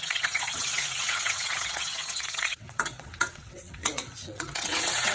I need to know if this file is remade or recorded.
remade